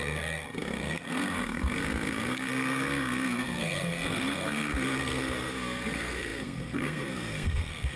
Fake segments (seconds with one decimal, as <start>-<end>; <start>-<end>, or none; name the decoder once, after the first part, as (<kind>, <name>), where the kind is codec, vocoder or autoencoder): 0.0-8.0 (codec, SNAC)